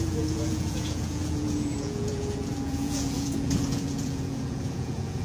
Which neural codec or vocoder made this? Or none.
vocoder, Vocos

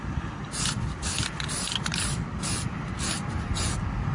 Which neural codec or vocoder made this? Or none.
none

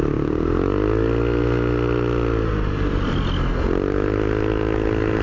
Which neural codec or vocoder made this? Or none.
none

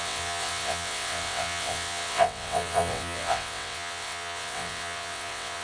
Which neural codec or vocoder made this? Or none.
vocoder, WaveNeXt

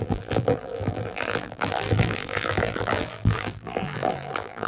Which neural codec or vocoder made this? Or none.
vocoder, BigVGAN v2